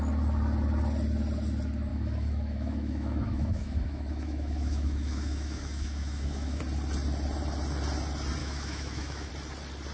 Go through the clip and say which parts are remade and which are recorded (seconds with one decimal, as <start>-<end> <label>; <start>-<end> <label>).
0.0-1.9 recorded; 1.9-6.6 remade; 6.6-8.4 recorded; 8.4-9.3 remade; 9.3-9.9 recorded